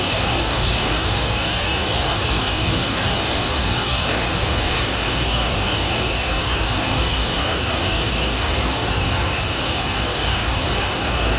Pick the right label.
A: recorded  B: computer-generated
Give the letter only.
B